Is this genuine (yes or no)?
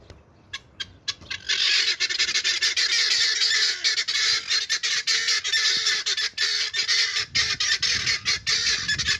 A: yes